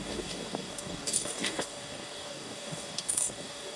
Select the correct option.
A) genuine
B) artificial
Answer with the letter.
B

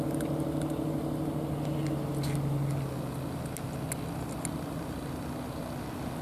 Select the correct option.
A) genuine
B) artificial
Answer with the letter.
A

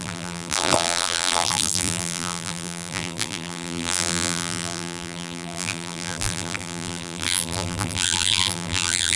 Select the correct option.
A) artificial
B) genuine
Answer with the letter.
A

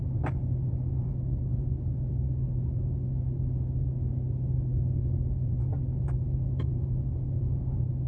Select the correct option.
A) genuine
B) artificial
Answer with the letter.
A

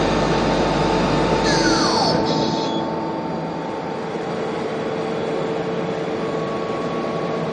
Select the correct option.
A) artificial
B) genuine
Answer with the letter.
B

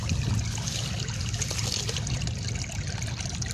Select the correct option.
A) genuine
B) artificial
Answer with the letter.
A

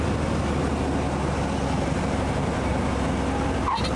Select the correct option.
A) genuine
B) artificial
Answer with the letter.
A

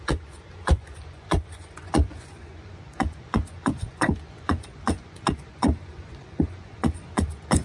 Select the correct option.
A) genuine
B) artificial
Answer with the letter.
B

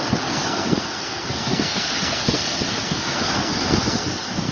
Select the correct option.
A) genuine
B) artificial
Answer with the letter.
B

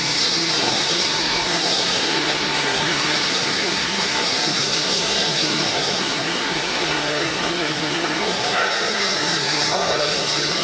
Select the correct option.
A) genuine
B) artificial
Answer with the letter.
B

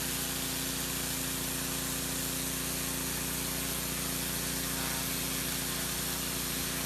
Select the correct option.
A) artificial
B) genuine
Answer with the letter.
B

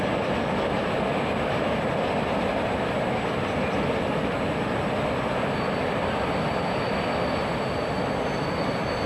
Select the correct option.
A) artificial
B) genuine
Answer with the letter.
B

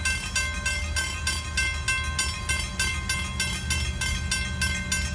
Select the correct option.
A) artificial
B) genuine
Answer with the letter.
B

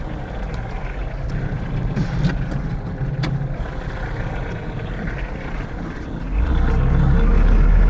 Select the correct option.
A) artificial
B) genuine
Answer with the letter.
B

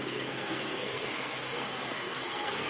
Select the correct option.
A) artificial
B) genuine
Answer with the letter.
A